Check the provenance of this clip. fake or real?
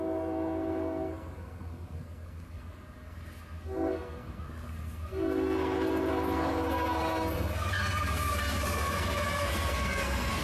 fake